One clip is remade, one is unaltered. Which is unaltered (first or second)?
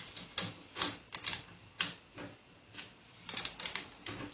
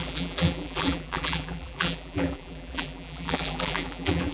first